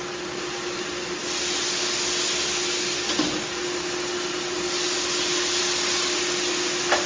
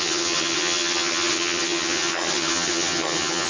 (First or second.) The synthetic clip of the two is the second